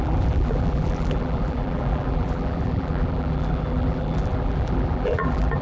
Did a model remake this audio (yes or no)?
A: yes